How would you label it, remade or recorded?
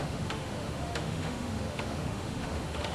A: remade